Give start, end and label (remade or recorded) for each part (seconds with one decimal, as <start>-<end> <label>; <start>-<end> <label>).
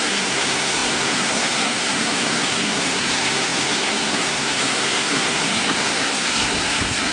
0.0-7.1 remade